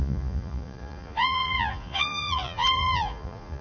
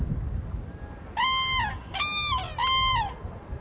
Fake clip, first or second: first